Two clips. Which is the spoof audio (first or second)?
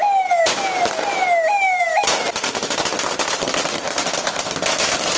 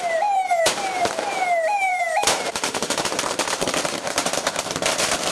second